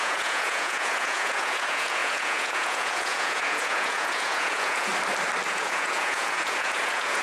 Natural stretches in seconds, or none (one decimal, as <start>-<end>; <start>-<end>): 4.9-5.5